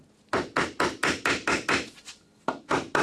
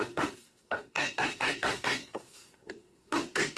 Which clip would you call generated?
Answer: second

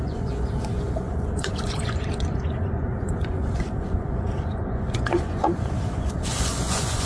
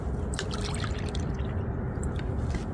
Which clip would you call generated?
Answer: first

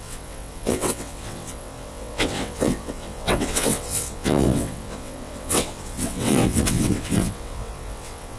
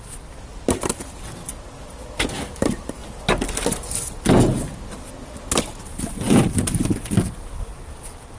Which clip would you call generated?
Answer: first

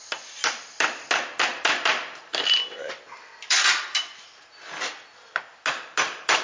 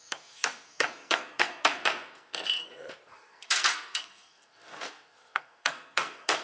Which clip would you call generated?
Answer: second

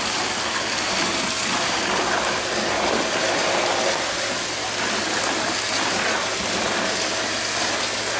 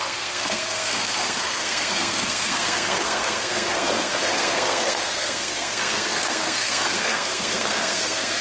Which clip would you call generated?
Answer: second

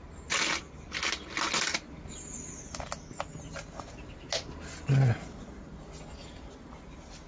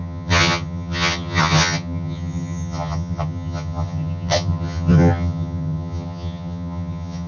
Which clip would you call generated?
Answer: second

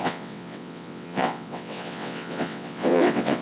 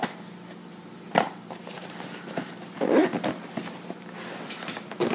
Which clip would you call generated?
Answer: first